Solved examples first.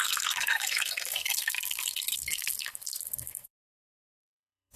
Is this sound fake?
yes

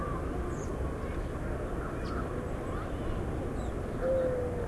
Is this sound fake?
no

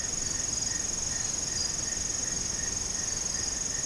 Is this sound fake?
no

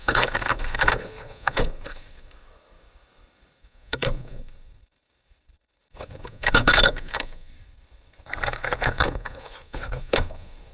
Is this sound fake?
yes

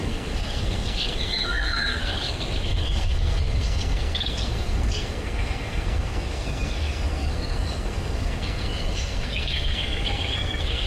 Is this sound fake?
yes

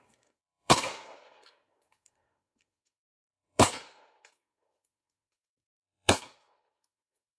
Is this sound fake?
yes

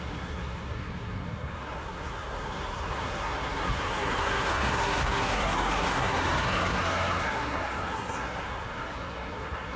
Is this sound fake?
yes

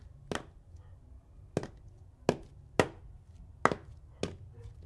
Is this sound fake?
no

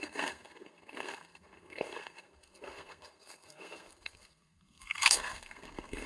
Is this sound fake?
yes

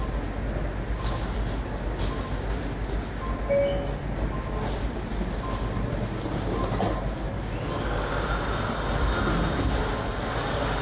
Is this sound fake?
no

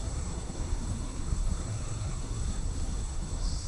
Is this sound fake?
yes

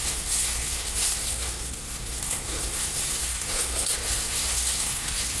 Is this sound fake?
yes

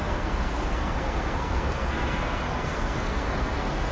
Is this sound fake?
yes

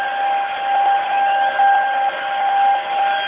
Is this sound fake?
no